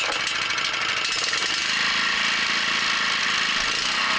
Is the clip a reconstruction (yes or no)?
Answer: no